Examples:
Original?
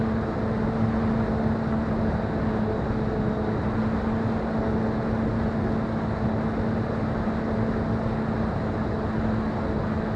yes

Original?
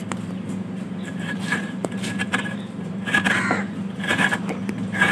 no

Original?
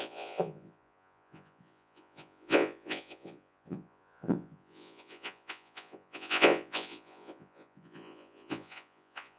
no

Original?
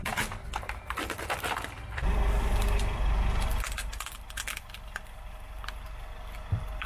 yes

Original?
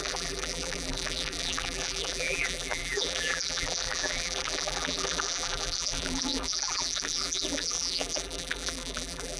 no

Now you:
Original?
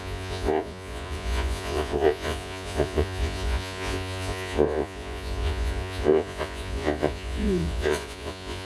no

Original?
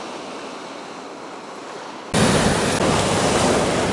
yes